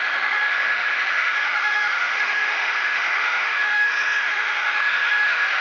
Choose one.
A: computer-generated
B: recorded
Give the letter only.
A